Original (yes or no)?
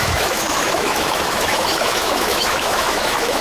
no